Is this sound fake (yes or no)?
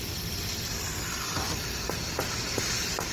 no